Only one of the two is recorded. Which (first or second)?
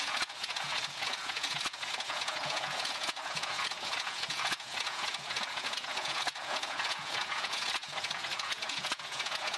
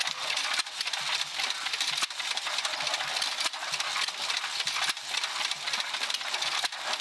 second